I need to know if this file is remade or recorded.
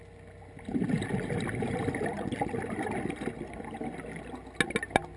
recorded